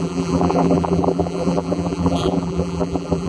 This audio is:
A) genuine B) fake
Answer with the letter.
B